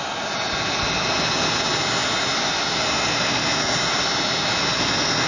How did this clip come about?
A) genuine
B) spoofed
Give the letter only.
A